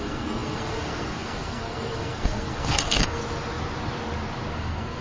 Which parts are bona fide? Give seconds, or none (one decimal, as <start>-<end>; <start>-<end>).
3.2-4.5